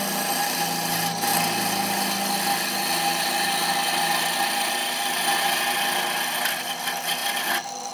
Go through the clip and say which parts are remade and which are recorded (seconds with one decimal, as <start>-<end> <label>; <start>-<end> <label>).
0.0-7.9 recorded

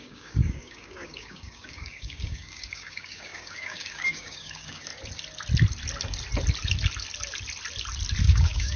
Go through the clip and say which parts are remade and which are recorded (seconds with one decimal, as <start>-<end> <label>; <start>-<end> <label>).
0.0-4.9 remade; 4.9-8.2 recorded; 8.2-8.8 remade